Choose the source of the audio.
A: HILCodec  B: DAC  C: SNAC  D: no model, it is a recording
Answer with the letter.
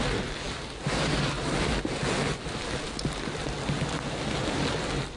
D